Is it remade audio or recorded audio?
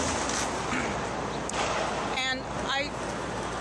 recorded